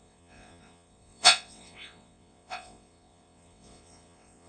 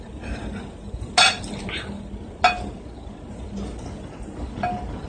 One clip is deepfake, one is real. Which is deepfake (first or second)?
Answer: first